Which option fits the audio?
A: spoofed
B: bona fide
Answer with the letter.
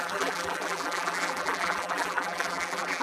A